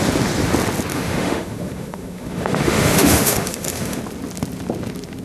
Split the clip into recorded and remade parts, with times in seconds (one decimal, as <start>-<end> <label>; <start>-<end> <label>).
0.0-0.9 recorded; 0.9-4.0 remade; 4.0-5.2 recorded